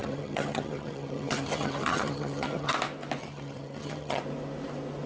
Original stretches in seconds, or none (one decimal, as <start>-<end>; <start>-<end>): 2.7-3.2; 4.2-5.1